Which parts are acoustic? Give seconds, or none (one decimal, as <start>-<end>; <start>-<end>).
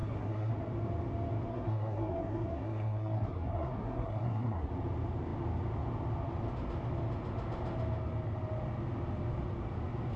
0.5-1.5; 4.7-10.2